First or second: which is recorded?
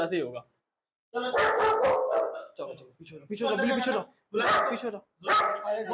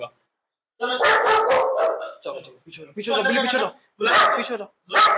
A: first